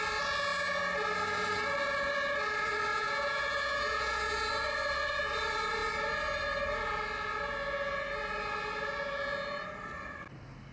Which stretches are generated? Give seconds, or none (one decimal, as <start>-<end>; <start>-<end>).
2.9-4.5